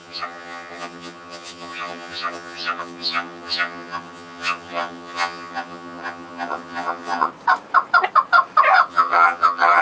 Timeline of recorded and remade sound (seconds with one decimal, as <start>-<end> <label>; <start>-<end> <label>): 0.0-7.3 remade; 7.3-8.9 recorded; 8.9-9.8 remade